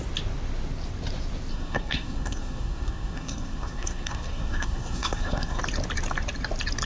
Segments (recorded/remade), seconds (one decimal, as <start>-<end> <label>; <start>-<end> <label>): 0.0-1.5 recorded; 1.5-5.6 remade; 5.6-6.9 recorded

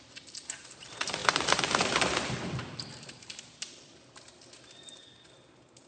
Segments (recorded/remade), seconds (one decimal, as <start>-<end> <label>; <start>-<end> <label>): 0.0-1.2 recorded; 1.2-3.7 remade; 3.7-5.9 recorded

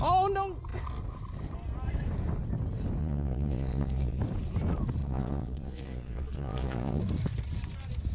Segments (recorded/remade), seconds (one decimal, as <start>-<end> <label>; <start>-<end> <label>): 0.0-3.0 recorded; 3.0-4.2 remade; 4.2-5.0 recorded; 5.0-7.0 remade; 7.0-8.1 recorded

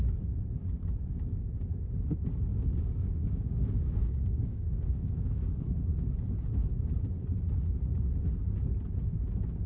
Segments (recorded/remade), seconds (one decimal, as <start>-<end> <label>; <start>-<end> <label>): 0.0-2.5 recorded; 2.5-5.5 remade; 5.5-9.7 recorded

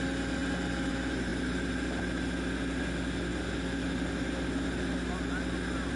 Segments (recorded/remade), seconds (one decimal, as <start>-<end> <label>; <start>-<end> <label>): 0.0-6.0 recorded

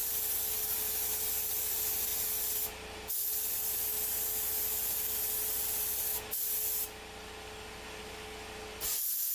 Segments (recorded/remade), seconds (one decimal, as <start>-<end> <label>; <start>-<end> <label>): 0.0-9.3 recorded

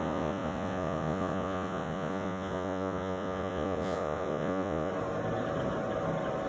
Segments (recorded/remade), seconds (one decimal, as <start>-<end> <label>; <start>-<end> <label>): 0.0-4.9 remade; 4.9-6.5 recorded

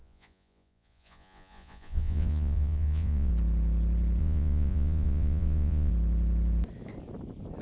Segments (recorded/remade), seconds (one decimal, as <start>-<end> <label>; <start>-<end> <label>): 0.0-3.3 remade; 3.3-4.2 recorded; 4.2-5.9 remade; 5.9-7.6 recorded